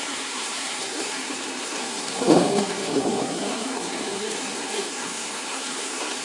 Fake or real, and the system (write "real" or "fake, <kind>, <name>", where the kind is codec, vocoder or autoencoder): fake, codec, SNAC